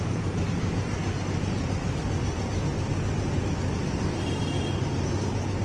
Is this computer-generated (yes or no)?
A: no